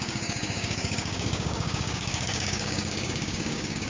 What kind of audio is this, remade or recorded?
remade